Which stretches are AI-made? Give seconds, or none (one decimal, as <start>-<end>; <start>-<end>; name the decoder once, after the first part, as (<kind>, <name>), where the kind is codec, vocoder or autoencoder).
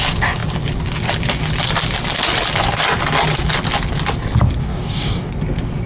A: 4.6-5.3 (codec, DAC)